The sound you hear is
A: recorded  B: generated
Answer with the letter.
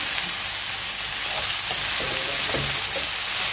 A